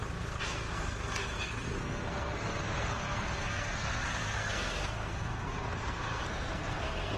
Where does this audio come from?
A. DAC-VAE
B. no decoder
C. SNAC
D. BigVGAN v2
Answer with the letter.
C